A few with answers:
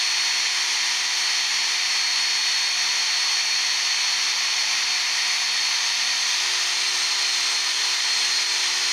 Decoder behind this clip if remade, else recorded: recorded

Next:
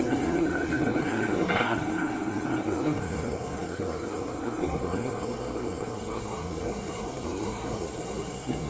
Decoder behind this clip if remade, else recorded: remade, codec, SNAC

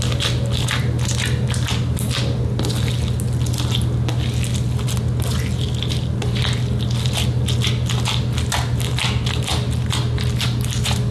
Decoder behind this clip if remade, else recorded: recorded